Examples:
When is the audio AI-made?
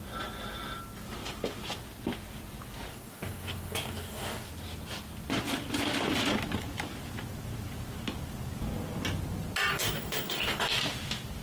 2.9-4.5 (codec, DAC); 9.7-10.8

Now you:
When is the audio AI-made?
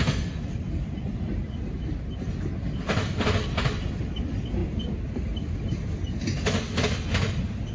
none